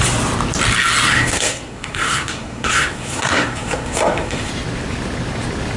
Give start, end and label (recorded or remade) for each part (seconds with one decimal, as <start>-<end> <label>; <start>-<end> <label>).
0.0-1.1 recorded; 1.1-4.5 remade; 4.5-5.8 recorded

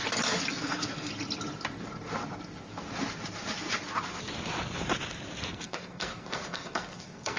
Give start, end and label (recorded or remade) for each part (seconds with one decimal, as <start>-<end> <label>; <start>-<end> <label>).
0.0-0.5 recorded; 0.5-1.1 remade; 1.1-5.5 recorded; 5.5-7.4 remade

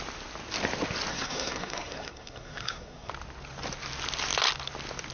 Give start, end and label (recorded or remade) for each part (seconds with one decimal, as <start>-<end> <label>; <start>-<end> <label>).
0.0-1.1 recorded; 1.1-3.1 remade; 3.1-5.1 recorded